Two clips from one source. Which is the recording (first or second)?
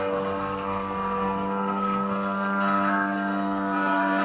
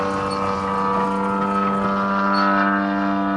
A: second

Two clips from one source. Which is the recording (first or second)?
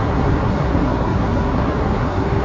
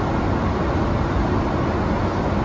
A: second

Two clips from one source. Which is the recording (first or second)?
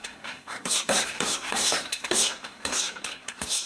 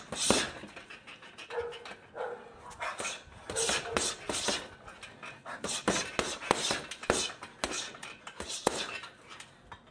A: second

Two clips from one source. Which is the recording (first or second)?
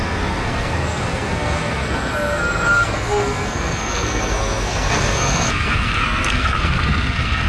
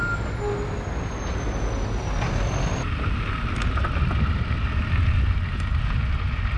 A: second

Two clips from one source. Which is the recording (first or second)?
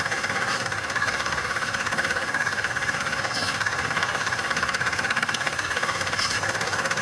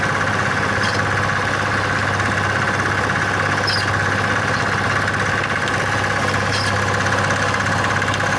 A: second